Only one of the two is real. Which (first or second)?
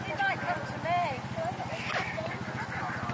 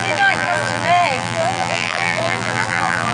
first